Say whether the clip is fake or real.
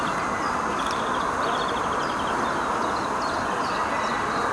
real